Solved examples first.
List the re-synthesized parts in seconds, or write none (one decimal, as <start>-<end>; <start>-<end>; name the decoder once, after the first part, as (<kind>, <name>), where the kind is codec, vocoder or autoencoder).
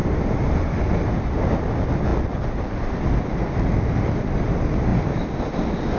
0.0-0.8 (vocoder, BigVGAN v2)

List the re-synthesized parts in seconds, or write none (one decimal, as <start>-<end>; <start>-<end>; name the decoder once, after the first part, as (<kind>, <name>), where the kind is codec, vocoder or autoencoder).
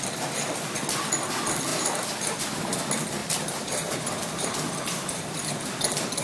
1.7-2.8 (vocoder, BigVGAN v2); 3.2-5.8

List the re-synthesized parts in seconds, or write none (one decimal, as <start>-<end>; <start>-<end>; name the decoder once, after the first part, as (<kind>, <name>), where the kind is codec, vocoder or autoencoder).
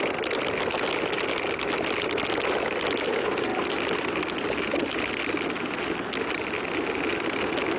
3.5-5.0 (vocoder, BigVGAN v2)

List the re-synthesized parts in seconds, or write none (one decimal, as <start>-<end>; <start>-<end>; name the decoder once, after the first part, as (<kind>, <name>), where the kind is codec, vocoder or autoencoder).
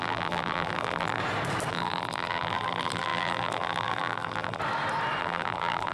0.0-1.2 (vocoder, BigVGAN v2); 1.7-4.6; 5.2-5.9